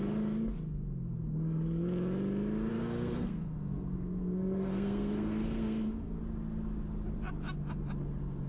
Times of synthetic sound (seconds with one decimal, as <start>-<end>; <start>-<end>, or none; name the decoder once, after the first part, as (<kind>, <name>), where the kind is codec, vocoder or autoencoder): 2.7-6.2 (codec, SNAC)